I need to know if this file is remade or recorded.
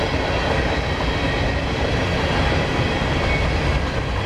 recorded